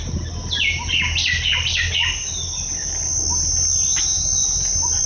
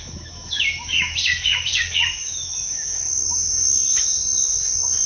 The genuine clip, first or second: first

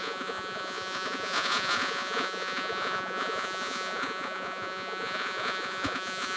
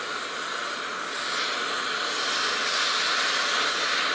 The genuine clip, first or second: second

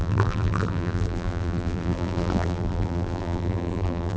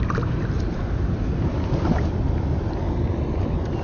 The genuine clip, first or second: second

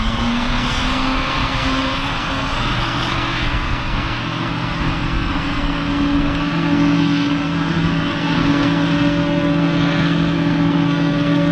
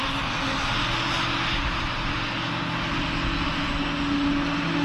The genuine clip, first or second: second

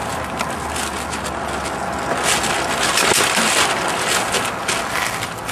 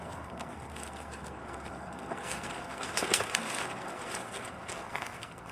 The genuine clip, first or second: first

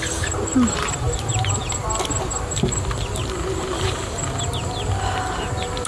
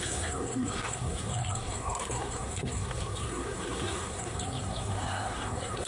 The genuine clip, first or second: first